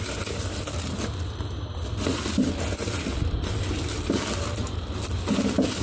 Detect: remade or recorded recorded